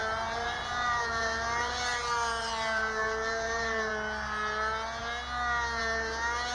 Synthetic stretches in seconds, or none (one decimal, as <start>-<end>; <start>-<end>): 0.0-3.9